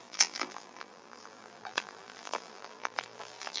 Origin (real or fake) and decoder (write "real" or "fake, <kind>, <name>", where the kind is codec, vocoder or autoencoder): fake, vocoder, BigVGAN v2